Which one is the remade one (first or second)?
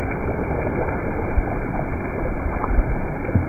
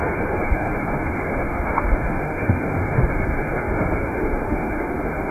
second